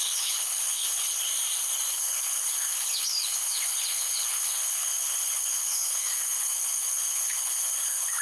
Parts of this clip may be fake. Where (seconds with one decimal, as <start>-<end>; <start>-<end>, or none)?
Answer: 0.0-1.3; 1.9-8.2

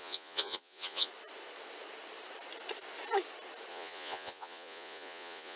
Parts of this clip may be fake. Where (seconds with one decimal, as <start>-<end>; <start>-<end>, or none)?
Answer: 0.0-1.1; 3.7-5.6

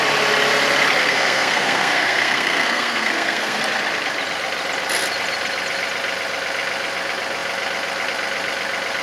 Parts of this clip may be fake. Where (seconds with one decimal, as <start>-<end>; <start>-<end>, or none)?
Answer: 1.0-3.6

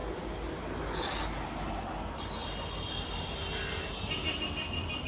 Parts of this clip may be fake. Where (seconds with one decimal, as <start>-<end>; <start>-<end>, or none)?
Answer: none

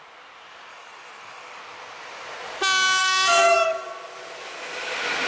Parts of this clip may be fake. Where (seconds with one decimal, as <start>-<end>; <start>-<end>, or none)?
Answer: 0.7-1.6; 3.0-3.9